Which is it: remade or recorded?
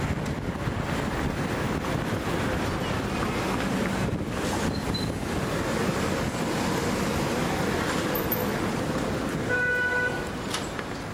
recorded